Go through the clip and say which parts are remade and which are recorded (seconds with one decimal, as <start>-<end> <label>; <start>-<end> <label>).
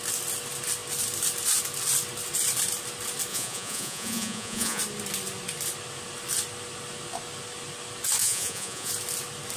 0.0-3.3 recorded; 3.3-4.8 remade; 4.8-8.2 recorded; 8.2-8.9 remade; 8.9-9.6 recorded